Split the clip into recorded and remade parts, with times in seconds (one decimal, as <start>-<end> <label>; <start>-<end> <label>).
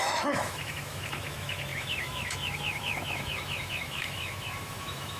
0.0-5.2 remade